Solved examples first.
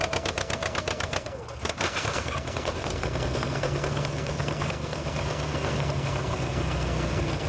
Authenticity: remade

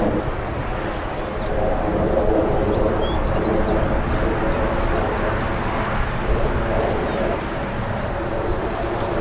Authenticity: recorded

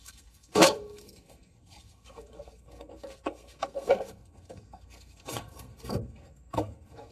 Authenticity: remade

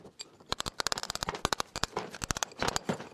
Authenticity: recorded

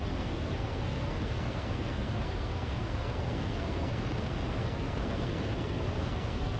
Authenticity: remade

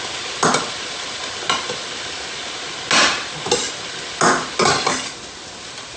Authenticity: recorded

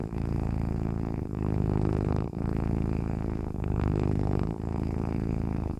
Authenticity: remade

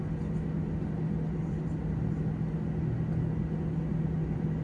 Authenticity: recorded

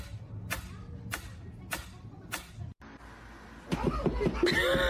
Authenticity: recorded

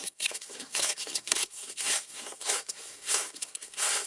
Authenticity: remade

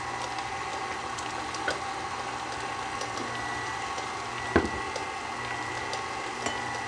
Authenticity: recorded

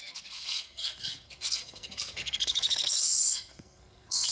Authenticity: remade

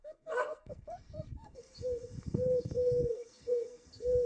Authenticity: remade